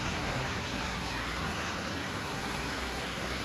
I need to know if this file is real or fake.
fake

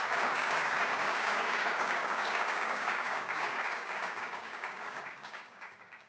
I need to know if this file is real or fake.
fake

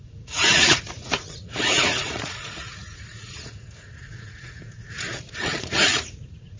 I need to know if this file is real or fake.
fake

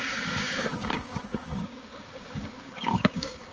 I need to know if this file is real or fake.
fake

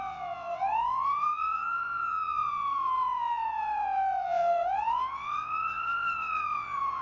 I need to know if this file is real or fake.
fake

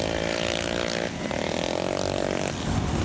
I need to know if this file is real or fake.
real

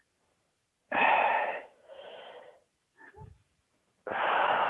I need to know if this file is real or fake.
fake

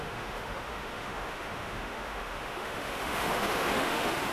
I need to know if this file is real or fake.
fake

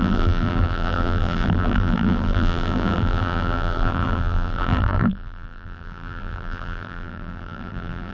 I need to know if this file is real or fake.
fake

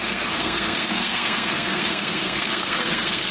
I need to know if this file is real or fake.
fake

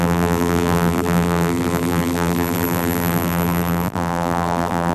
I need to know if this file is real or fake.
fake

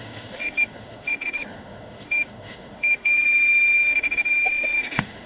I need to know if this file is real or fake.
fake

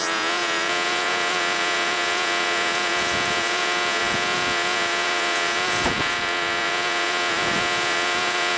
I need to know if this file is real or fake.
fake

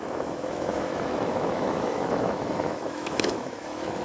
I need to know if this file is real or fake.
fake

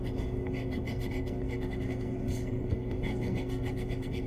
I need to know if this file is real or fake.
fake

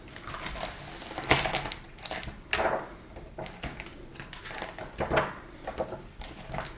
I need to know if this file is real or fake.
real